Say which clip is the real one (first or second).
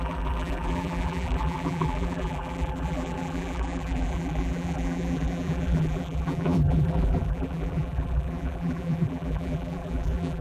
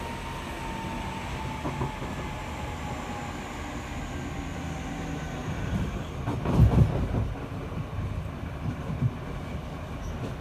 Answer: second